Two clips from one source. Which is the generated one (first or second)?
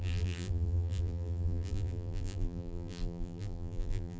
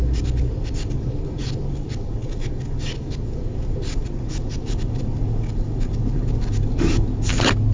first